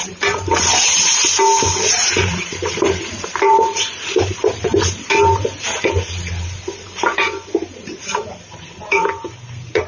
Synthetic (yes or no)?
yes